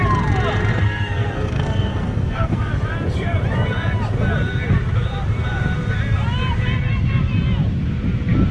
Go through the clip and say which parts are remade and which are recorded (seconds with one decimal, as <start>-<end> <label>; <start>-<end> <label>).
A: 0.0-0.7 recorded; 0.7-2.7 remade; 2.7-8.5 recorded